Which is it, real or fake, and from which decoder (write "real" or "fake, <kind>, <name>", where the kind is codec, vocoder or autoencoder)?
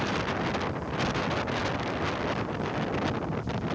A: real